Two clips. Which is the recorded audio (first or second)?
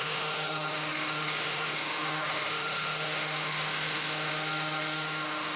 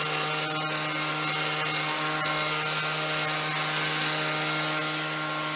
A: second